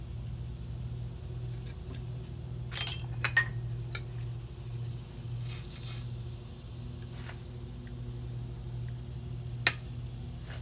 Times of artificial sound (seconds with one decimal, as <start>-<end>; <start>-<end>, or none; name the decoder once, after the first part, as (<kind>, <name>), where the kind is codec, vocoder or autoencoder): none